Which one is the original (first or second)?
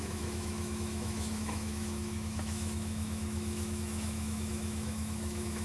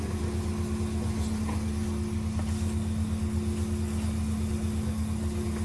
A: second